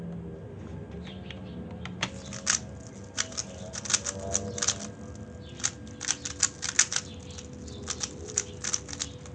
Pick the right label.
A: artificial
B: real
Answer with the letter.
B